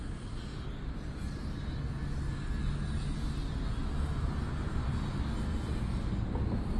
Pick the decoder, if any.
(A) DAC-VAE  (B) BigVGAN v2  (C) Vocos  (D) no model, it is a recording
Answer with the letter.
D